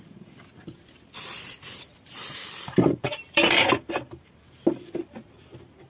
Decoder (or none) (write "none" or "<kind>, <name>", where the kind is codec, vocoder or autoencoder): vocoder, BigVGAN v2